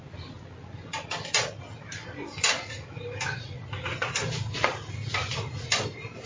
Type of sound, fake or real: real